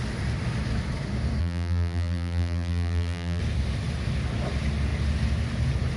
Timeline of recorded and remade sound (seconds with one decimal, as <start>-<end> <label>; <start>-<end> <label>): 0.0-1.4 recorded; 1.4-3.4 remade; 3.4-6.0 recorded